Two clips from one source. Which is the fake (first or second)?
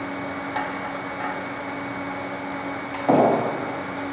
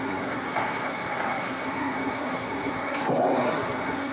second